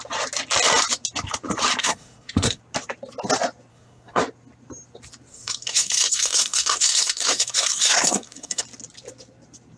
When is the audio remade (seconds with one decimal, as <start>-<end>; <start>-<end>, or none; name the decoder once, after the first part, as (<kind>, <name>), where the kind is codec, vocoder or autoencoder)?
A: 1.8-2.6 (codec, SNAC); 3.7-4.2; 5.3-8.6